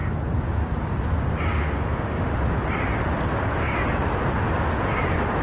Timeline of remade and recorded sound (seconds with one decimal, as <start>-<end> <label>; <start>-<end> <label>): 0.0-1.5 recorded; 1.5-2.3 remade; 2.3-5.4 recorded